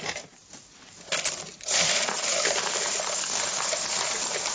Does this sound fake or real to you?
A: real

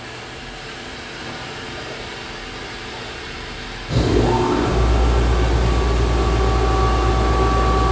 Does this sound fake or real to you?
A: real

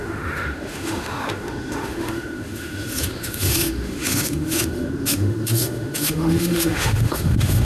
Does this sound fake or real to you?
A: fake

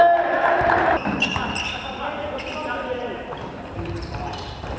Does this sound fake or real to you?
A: fake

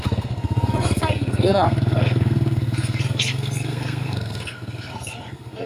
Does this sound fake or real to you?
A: fake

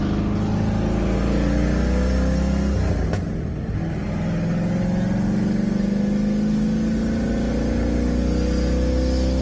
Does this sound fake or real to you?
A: real